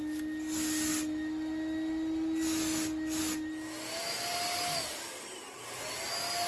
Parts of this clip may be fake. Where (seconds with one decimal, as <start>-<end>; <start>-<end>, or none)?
none